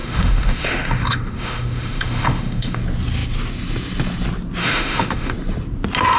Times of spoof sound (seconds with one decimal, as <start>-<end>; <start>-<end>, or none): 0.0-2.8; 4.6-5.3